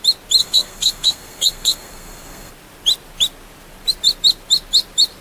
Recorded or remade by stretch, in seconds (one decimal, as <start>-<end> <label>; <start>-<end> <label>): 0.0-0.4 recorded; 0.4-2.5 remade; 2.5-5.2 recorded